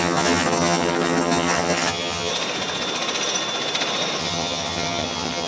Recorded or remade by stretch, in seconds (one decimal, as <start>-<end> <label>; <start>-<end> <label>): 0.0-2.3 remade; 2.3-4.2 recorded; 4.2-5.5 remade